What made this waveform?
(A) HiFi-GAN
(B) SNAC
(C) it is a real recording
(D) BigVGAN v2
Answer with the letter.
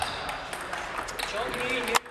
C